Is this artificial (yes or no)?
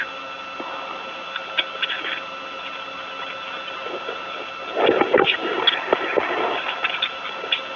no